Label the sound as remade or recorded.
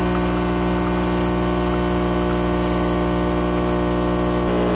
recorded